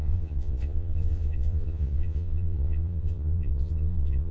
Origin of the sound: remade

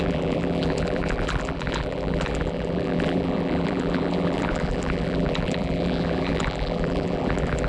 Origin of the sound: remade